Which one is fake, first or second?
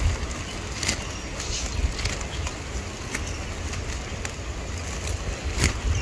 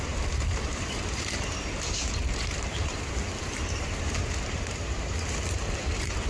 second